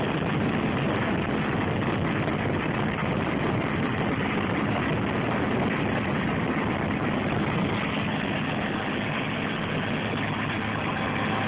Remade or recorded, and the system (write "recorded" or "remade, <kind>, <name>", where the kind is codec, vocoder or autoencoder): recorded